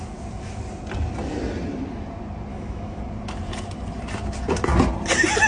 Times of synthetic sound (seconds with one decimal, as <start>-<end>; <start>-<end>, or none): 2.5-3.0